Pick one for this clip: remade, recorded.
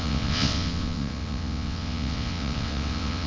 remade